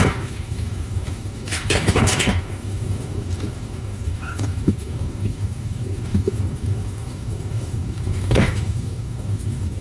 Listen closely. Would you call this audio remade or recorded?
remade